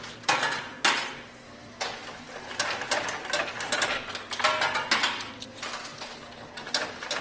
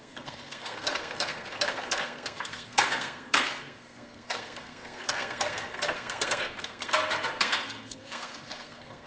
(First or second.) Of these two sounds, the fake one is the second